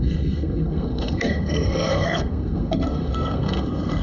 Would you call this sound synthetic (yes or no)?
yes